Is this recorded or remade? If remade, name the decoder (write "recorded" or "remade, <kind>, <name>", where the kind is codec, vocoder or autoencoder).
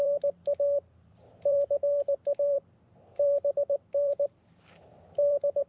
remade, vocoder, BigVGAN v2